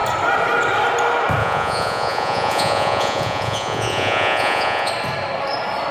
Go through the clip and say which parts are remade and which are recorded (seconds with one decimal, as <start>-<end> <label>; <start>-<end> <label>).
0.0-1.4 recorded; 1.4-4.9 remade; 4.9-5.9 recorded